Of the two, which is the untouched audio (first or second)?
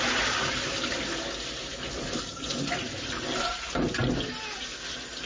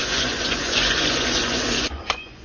first